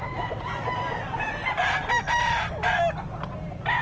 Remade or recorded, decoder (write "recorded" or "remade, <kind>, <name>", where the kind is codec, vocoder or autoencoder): recorded